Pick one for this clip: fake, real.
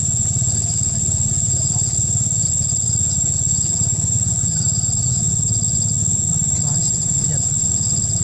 real